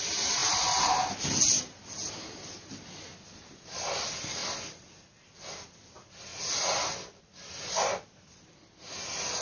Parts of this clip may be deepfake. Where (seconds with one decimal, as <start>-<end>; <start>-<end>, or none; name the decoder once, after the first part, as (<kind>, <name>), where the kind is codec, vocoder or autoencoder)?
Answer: none